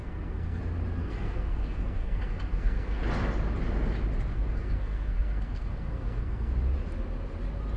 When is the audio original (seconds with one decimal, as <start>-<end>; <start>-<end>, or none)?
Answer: 0.6-1.0; 3.0-4.3; 6.5-7.8